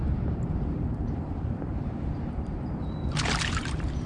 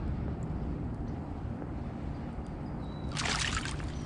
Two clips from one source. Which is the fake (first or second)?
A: first